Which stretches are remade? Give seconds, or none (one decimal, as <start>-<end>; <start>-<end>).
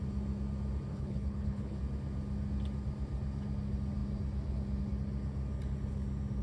0.9-1.8